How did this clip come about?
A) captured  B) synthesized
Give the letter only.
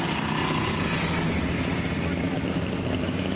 A